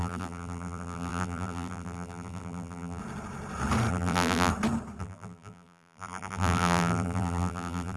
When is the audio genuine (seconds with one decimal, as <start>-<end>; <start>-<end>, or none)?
3.0-3.9; 4.5-5.0